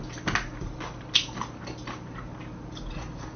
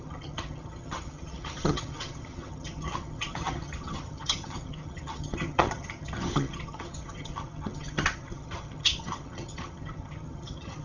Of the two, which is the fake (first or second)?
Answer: second